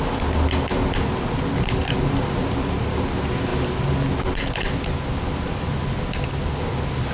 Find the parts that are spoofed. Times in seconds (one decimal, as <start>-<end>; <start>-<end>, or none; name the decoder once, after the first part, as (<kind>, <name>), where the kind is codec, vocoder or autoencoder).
none